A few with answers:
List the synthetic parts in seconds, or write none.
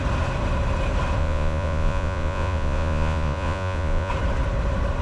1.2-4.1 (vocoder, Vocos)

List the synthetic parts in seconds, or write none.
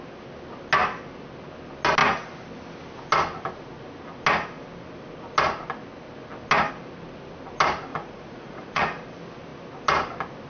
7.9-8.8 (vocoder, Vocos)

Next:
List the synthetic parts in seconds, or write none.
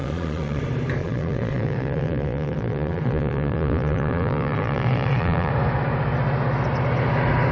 0.0-0.6 (vocoder, Vocos); 1.0-5.5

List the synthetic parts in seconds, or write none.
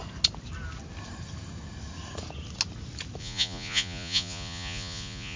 3.2-5.4 (vocoder, Vocos)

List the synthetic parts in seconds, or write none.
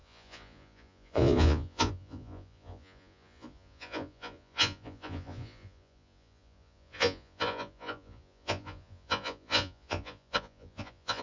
0.0-11.2 (vocoder, Vocos)